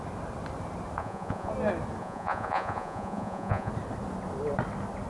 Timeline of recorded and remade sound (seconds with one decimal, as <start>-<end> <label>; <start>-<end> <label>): 0.0-1.0 recorded; 1.0-1.5 remade; 1.5-2.0 recorded; 2.0-3.7 remade; 3.7-5.1 recorded